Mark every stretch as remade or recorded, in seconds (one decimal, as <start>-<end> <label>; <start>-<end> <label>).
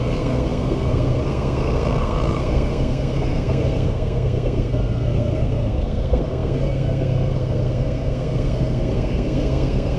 0.0-10.0 remade